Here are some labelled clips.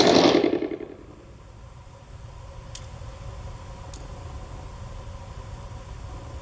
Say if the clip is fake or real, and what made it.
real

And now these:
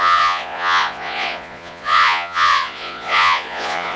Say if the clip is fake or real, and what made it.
fake, vocoder, Vocos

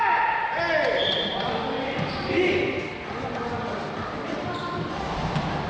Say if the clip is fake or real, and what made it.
real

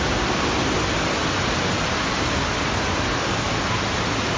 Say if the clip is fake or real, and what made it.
real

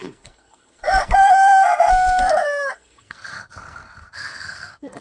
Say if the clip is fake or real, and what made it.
fake, codec, SNAC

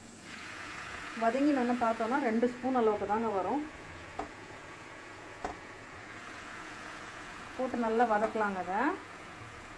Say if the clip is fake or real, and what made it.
fake, vocoder, Vocos